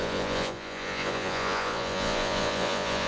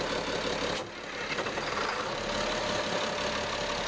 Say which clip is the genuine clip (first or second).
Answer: second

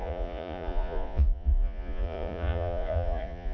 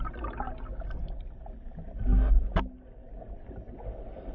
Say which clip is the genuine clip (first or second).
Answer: second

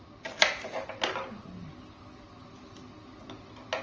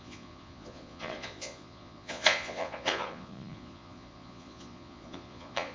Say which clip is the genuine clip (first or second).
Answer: first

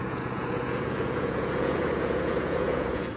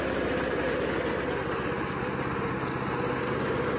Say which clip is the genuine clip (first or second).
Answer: second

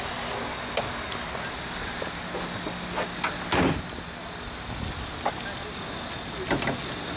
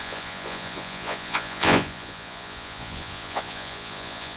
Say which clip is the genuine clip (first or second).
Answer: first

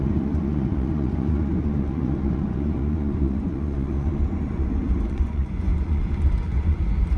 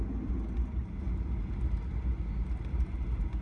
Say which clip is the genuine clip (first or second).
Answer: second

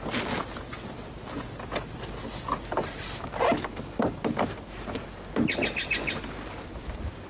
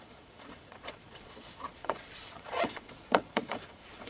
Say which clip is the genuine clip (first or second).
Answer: first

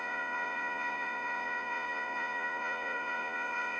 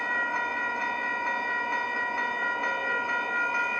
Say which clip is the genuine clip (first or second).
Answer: second